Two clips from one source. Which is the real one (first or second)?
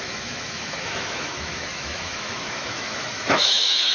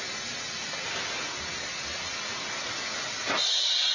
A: second